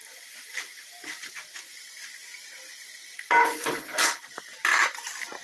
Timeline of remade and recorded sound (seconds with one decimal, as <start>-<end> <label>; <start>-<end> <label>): 0.0-3.4 recorded; 3.4-4.2 remade; 4.2-5.4 recorded